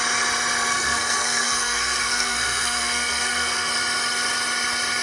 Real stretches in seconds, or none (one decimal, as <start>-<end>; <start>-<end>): 0.0-0.7; 3.7-5.0